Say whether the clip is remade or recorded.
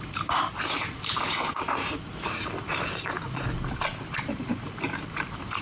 remade